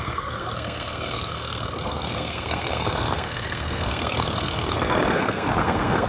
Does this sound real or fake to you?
fake